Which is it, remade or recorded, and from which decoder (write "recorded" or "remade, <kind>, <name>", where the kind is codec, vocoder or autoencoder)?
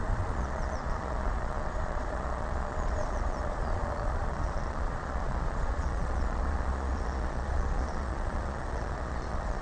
remade, vocoder, Vocos